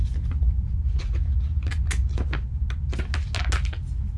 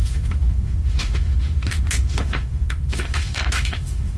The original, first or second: first